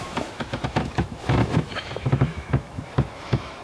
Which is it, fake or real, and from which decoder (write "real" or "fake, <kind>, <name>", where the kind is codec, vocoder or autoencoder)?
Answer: fake, autoencoder, DAC-VAE